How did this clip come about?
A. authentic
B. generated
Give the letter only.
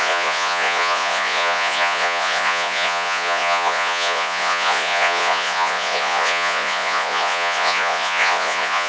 B